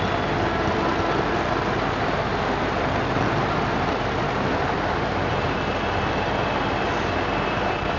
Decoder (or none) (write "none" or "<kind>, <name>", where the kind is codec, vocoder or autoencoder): none